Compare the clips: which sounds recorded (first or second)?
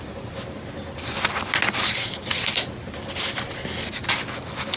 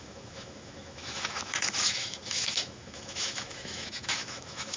first